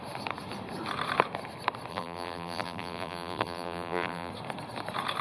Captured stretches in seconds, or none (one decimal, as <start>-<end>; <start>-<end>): 0.0-1.9; 4.3-5.2